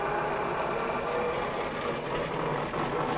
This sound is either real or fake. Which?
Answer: real